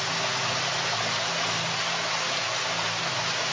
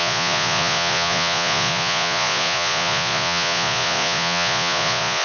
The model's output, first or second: second